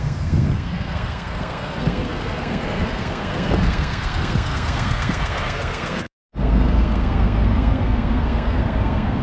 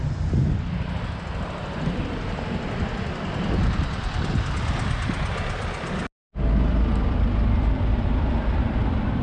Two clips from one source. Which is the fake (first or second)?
first